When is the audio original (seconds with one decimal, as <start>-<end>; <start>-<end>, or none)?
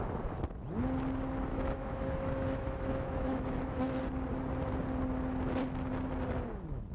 0.0-1.5; 4.0-6.9